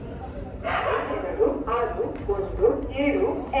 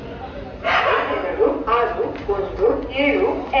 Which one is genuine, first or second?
second